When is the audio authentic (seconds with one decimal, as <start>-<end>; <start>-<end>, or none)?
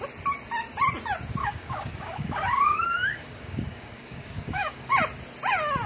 0.0-1.4; 4.9-5.9